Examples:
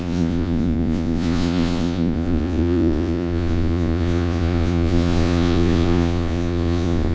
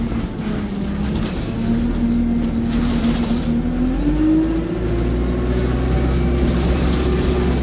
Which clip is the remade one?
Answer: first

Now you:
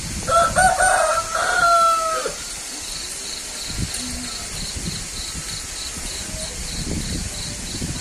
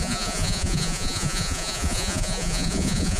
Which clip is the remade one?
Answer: second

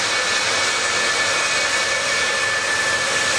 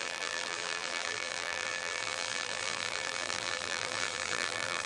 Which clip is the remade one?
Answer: second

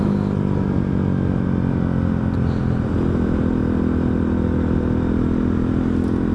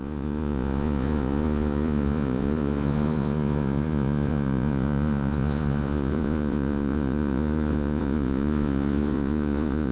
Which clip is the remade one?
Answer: second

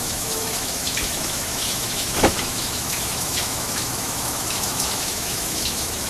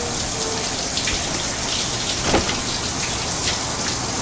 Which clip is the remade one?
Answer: first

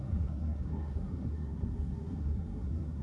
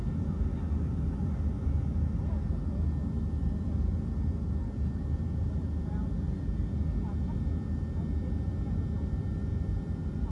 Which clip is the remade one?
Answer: first